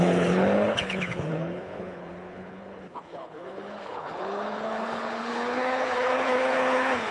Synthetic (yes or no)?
yes